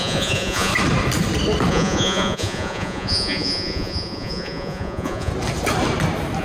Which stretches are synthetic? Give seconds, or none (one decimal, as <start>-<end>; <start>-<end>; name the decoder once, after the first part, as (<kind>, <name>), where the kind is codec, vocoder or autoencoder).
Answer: 0.0-0.7 (vocoder, Vocos); 1.7-5.3